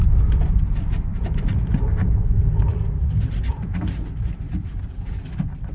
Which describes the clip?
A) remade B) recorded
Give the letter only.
B